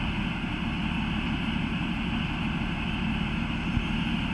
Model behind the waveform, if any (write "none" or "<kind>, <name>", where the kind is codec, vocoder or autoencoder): none